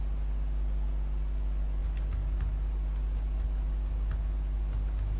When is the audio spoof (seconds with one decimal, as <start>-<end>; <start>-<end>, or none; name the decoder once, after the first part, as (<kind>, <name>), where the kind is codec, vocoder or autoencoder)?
none